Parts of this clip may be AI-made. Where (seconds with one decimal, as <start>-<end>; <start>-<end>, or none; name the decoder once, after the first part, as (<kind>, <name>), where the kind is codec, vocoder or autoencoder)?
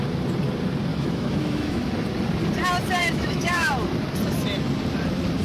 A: 0.9-1.9 (autoencoder, DAC-VAE); 3.0-3.7